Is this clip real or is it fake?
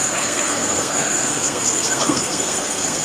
fake